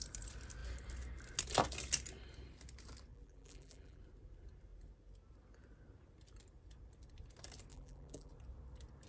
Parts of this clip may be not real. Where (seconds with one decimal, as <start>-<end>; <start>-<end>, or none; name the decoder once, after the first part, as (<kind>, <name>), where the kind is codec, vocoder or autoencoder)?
3.1-4.0 (vocoder, BigVGAN v2); 7.7-8.3